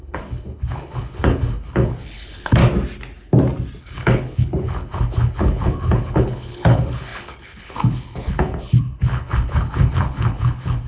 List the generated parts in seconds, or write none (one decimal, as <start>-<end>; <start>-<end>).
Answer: 0.0-2.6; 3.8-10.9